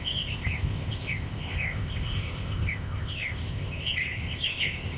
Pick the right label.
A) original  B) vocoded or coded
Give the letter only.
B